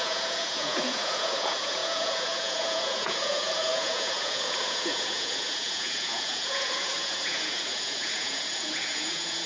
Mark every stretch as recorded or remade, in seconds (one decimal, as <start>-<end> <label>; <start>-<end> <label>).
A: 0.0-9.5 remade